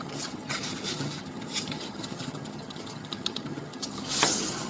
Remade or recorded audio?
remade